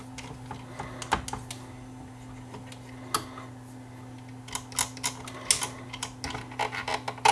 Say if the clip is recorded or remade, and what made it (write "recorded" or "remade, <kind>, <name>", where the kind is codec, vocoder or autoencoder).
recorded